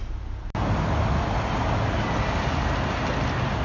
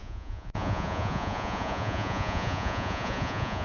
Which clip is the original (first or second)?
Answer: first